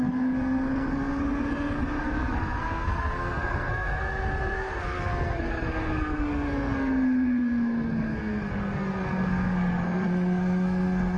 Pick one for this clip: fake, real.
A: fake